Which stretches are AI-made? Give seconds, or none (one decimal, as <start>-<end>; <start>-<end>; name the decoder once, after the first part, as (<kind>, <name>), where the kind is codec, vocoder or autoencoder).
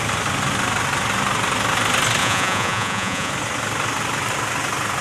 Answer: 2.2-3.3 (vocoder, Vocos)